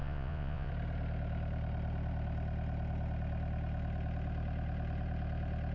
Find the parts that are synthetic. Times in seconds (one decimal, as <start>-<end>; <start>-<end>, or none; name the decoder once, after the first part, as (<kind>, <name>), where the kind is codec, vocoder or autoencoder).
0.0-0.7 (vocoder, Vocos)